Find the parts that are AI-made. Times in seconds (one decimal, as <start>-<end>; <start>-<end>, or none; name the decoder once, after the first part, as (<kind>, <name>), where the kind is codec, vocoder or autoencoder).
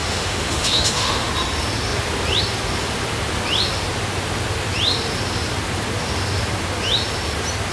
0.0-1.3 (autoencoder, DAC-VAE)